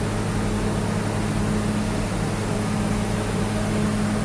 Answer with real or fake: real